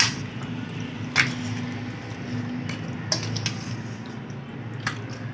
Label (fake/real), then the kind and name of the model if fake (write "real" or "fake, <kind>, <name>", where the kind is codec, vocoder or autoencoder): real